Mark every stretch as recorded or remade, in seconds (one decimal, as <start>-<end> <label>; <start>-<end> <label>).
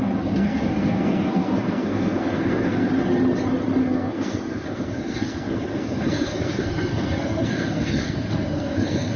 0.0-2.9 remade; 2.9-3.8 recorded; 3.8-9.2 remade